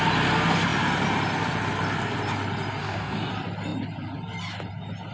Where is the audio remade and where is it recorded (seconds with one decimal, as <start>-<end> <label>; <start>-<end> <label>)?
0.0-2.8 recorded; 2.8-3.3 remade; 3.3-5.1 recorded

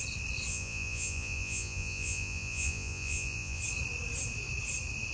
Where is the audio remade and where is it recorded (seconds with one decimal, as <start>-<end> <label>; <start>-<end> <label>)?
0.0-0.5 recorded; 0.5-3.6 remade; 3.6-5.1 recorded

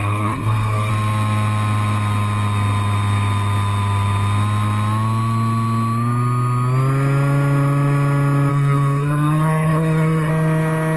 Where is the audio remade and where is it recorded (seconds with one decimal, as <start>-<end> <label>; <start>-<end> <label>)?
0.0-0.9 remade; 0.9-8.5 recorded; 8.5-10.3 remade; 10.3-11.0 recorded

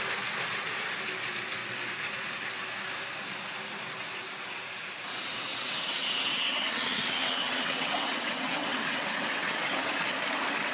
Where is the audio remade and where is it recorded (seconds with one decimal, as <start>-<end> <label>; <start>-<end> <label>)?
0.0-5.5 recorded; 5.5-9.9 remade; 9.9-10.7 recorded